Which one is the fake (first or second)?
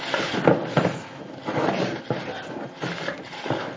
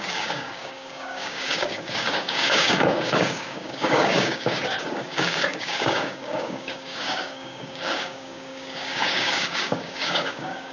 second